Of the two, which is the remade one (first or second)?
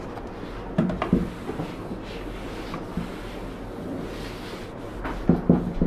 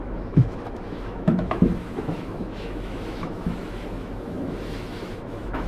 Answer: second